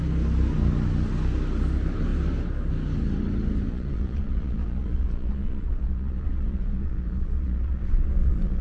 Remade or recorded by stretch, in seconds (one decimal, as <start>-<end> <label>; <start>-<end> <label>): 0.0-3.7 recorded; 3.7-8.6 remade